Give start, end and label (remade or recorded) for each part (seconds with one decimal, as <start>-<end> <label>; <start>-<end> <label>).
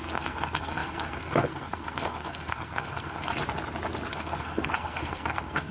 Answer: 0.0-3.3 remade; 3.3-4.1 recorded; 4.1-5.7 remade